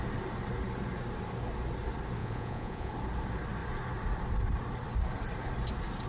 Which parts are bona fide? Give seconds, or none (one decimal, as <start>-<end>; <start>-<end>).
0.0-2.2; 2.9-6.1